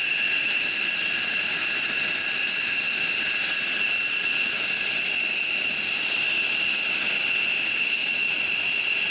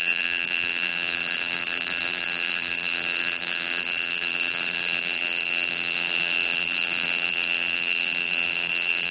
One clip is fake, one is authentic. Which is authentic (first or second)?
first